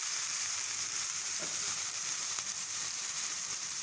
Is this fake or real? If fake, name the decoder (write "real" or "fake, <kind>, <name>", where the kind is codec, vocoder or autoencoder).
fake, vocoder, BigVGAN v2